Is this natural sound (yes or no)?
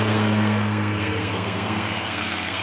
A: no